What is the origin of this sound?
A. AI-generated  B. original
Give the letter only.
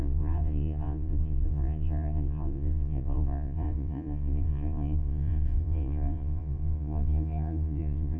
A